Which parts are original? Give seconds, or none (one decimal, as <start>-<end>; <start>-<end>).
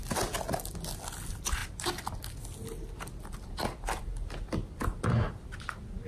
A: 0.0-6.1